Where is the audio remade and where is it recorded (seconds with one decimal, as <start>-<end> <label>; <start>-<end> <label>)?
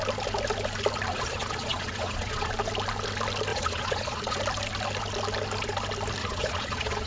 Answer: 0.0-1.1 recorded; 1.1-2.5 remade; 2.5-3.5 recorded; 3.5-4.4 remade; 4.4-6.2 recorded; 6.2-7.1 remade